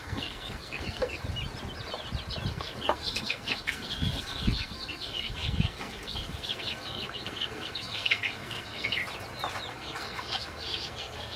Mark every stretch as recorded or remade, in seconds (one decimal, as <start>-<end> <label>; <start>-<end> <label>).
0.0-1.2 remade; 1.2-2.5 recorded; 2.5-9.0 remade; 9.0-9.7 recorded; 9.7-11.4 remade